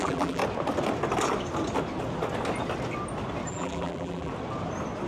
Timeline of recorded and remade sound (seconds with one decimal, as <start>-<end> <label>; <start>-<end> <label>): 0.0-0.4 remade; 0.4-3.5 recorded; 3.5-4.3 remade; 4.3-5.1 recorded